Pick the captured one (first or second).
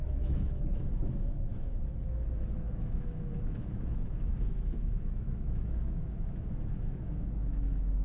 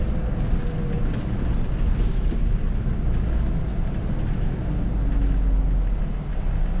second